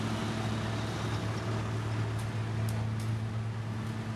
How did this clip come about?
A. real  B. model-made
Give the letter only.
A